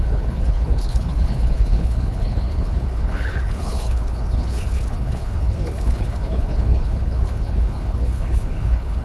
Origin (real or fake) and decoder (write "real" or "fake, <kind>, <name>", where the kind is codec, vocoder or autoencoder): fake, codec, HILCodec